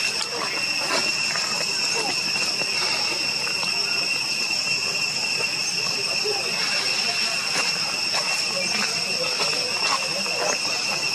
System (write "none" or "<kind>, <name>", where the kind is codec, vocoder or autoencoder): none